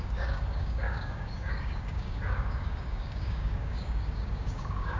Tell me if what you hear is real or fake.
fake